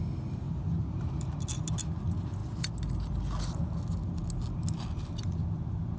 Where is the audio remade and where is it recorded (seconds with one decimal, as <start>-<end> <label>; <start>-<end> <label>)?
0.0-0.8 recorded; 0.8-1.5 remade; 1.5-6.0 recorded